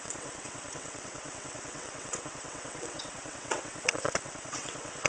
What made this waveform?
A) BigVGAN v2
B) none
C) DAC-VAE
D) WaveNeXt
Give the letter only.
D